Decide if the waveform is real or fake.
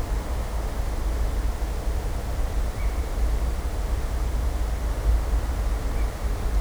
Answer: real